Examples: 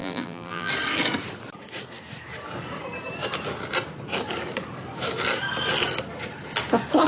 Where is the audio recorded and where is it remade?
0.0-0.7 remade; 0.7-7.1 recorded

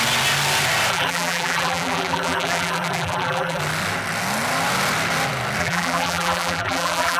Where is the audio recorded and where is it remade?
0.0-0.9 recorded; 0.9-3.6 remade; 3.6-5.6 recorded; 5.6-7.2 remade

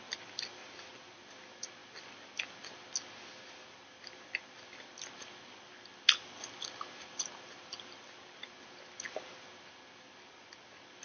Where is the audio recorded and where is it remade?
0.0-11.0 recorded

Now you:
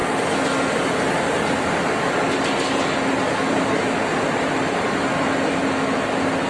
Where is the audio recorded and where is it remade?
0.0-6.5 recorded

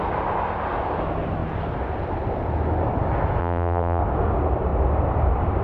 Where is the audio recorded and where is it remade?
0.0-3.4 recorded; 3.4-4.0 remade; 4.0-5.6 recorded